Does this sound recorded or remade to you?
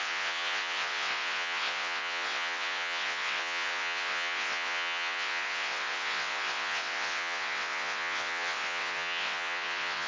remade